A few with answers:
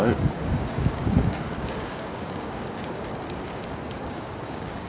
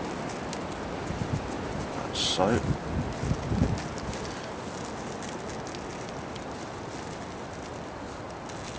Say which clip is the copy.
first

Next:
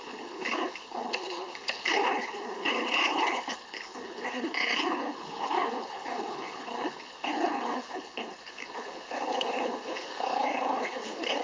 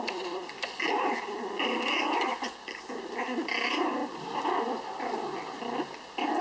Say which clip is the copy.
first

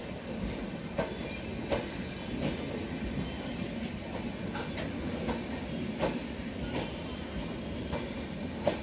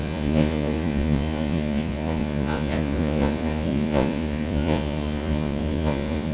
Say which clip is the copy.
second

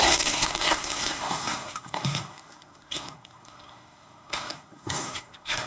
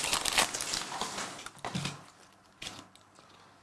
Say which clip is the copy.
first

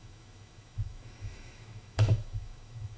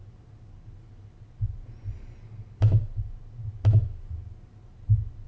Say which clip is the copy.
first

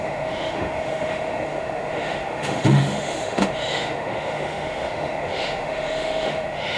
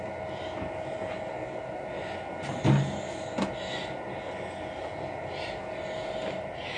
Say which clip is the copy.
first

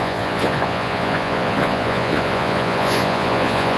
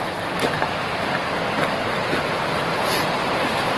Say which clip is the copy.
first